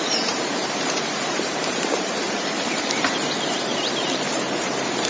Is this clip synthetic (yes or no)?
yes